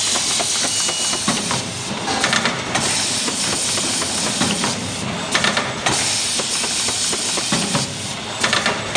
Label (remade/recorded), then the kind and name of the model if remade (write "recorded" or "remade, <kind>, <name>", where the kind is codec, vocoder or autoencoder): recorded